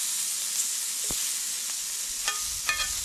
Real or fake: real